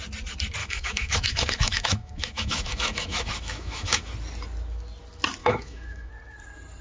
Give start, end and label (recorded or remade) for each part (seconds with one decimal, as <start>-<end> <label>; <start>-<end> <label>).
0.0-0.6 recorded; 0.6-4.1 remade; 4.1-5.4 recorded; 5.4-6.1 remade; 6.1-6.8 recorded